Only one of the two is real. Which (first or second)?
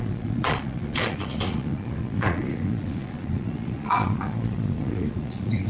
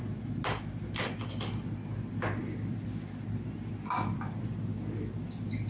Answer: second